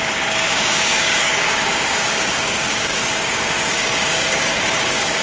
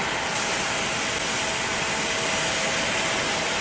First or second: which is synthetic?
first